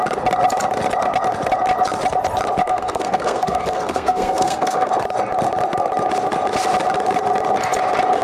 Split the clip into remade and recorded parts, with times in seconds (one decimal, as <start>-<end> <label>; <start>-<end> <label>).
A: 0.0-2.6 recorded; 2.6-4.9 remade; 4.9-8.2 recorded